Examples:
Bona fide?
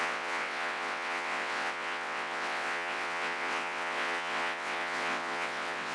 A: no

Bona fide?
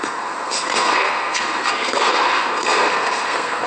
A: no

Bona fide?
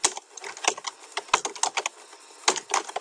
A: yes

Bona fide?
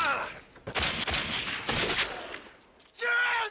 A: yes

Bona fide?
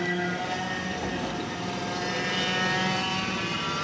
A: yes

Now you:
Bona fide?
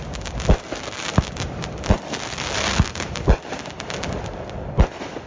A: no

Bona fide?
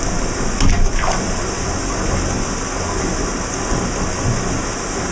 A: yes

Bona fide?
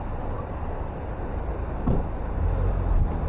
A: yes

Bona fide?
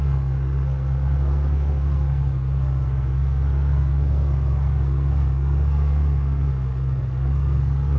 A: no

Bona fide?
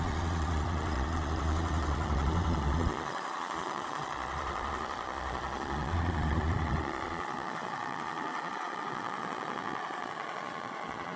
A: no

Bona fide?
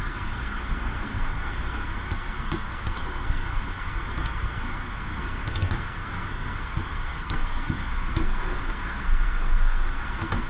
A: no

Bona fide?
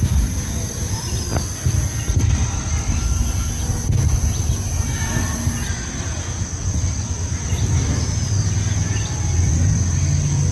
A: yes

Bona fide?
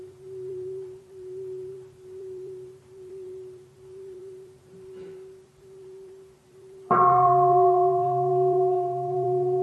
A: no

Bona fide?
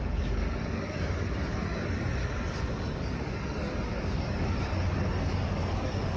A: no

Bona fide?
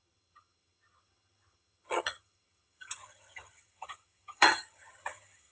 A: no